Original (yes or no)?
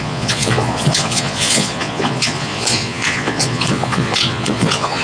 no